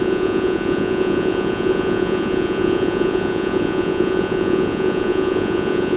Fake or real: fake